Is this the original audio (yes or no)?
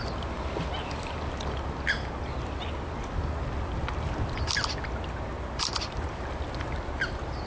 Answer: yes